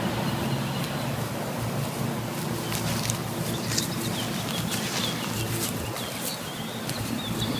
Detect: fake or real real